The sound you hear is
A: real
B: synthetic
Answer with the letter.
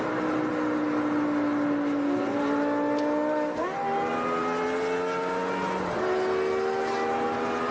A